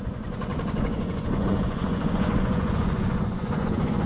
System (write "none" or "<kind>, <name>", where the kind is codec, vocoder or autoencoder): vocoder, Vocos